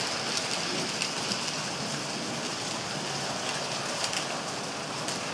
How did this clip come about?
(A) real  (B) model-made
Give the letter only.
A